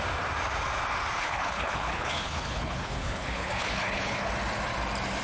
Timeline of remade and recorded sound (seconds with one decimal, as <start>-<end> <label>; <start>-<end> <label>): 0.0-1.2 recorded; 1.2-4.3 remade; 4.3-5.2 recorded